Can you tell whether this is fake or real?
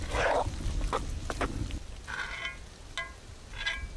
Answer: real